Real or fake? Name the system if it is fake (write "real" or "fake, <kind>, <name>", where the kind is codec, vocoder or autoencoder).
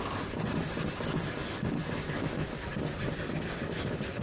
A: real